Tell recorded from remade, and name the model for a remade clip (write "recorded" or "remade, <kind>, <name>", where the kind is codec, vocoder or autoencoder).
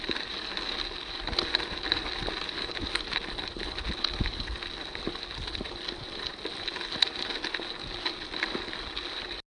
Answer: recorded